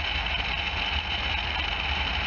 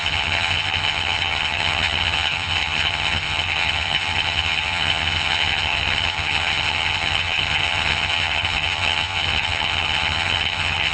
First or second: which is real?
first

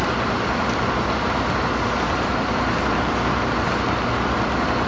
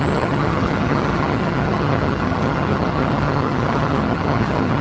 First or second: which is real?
first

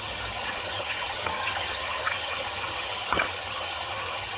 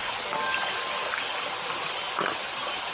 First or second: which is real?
second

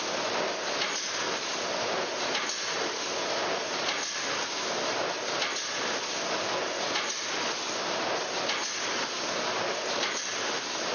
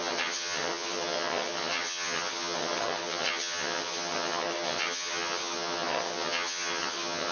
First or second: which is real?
first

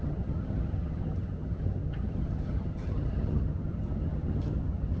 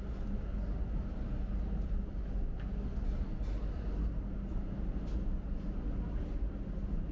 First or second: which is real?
second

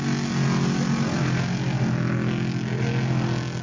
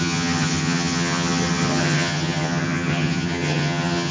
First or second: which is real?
first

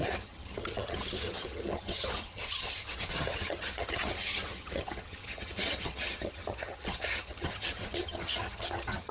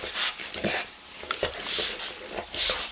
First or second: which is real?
second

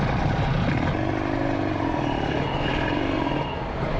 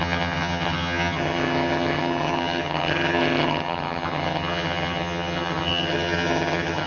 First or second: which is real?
first